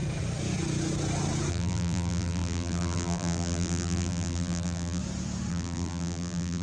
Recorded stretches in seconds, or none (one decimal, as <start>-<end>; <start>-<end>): 0.0-1.5; 5.0-5.5